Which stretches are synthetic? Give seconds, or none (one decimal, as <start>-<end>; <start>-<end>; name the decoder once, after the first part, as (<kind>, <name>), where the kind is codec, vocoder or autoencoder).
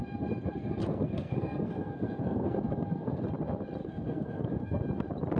0.0-3.2 (codec, SNAC); 3.8-4.8